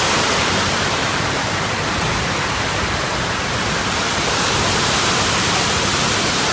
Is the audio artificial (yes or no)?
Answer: no